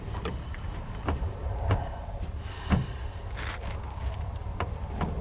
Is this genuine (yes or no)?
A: yes